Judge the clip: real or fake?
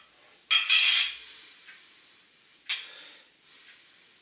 real